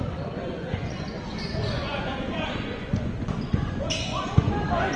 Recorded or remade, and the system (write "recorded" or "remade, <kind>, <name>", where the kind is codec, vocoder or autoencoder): remade, vocoder, Vocos